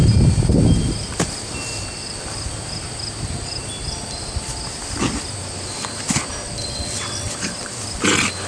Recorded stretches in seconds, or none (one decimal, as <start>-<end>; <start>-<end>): 0.0-6.6; 7.3-8.5